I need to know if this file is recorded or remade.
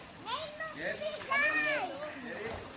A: recorded